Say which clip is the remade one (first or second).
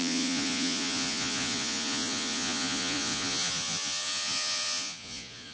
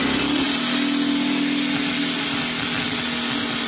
first